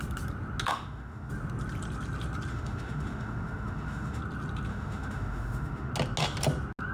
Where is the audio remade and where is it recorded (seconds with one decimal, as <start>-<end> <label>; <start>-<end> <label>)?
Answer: 0.0-0.7 recorded; 0.7-1.3 remade; 1.3-2.5 recorded; 2.5-4.2 remade; 4.2-4.7 recorded; 4.7-5.9 remade; 5.9-6.9 recorded